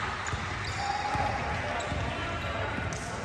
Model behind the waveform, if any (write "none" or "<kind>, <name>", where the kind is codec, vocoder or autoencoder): none